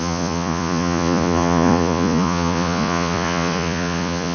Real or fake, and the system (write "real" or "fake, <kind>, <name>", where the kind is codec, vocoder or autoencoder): fake, vocoder, Vocos